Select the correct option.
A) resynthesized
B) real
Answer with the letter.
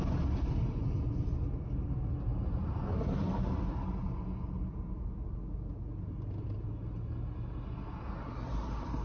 B